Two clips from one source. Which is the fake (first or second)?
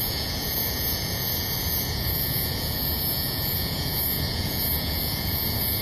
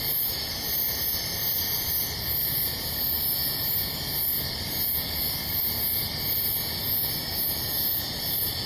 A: first